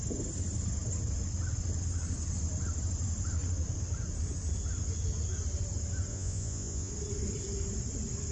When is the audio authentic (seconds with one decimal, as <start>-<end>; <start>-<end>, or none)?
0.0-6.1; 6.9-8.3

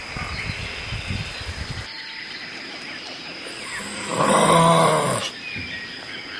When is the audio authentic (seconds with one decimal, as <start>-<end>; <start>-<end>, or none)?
0.0-6.4

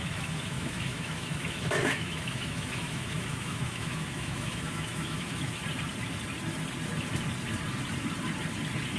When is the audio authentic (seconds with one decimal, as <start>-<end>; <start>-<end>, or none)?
5.6-9.0

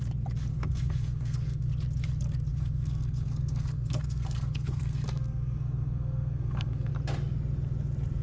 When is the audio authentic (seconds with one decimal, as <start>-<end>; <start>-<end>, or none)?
0.0-0.5; 1.7-2.5; 6.9-8.2